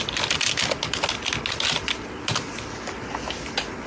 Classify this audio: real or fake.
real